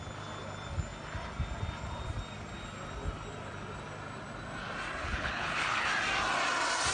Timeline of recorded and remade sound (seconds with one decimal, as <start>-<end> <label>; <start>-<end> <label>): 0.0-5.0 recorded; 5.0-5.9 remade; 5.9-6.9 recorded